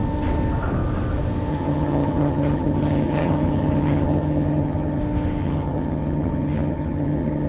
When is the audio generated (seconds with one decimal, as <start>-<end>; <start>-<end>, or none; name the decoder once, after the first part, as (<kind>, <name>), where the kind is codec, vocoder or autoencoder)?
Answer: 1.5-5.0 (vocoder, HiFi-GAN); 5.4-7.5